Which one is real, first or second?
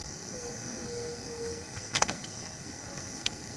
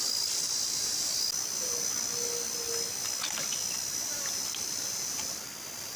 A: second